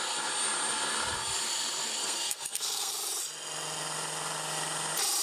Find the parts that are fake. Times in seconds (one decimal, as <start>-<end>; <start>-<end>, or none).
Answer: 2.0-2.9